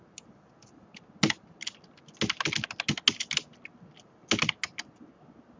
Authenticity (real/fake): real